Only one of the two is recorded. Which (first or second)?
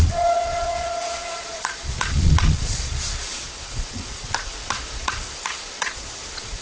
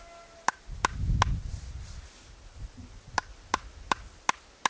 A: second